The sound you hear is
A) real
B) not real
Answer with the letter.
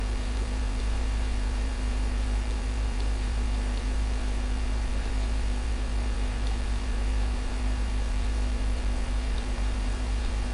B